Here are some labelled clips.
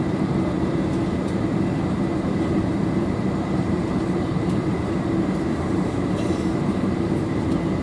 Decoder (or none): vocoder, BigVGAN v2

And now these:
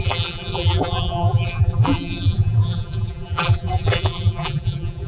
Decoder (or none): vocoder, BigVGAN v2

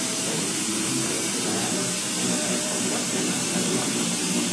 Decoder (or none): vocoder, BigVGAN v2